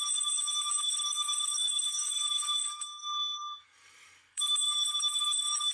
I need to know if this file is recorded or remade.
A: remade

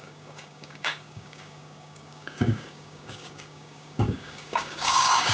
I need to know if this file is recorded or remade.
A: remade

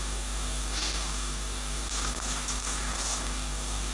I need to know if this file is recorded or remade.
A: remade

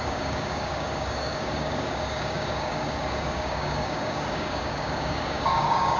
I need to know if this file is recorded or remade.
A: remade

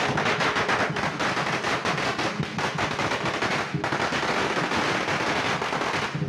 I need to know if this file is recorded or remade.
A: recorded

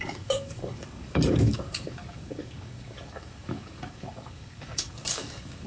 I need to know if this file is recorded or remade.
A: remade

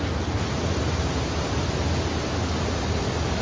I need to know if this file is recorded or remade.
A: recorded